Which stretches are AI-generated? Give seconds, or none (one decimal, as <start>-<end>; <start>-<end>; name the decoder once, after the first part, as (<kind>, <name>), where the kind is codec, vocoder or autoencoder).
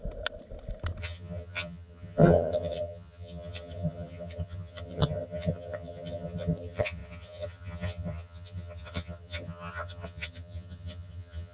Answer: 1.0-11.5 (vocoder, HiFi-GAN)